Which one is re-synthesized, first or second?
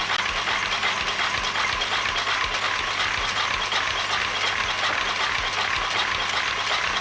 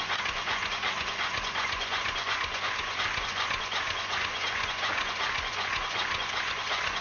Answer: second